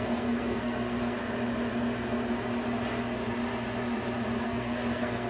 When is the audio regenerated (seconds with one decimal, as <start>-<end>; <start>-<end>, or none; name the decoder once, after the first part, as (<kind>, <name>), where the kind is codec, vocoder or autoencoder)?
0.0-1.2 (codec, SNAC); 4.4-5.3